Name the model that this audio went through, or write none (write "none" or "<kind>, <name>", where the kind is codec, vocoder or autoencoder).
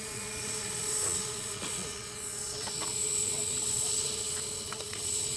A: vocoder, Vocos